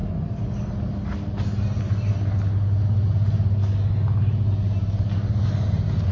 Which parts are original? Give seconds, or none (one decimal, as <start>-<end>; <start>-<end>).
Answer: 0.0-6.1